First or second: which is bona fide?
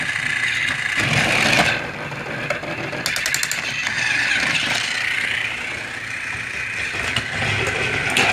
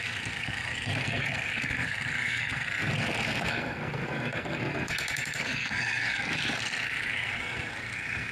first